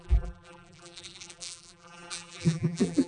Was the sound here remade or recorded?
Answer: remade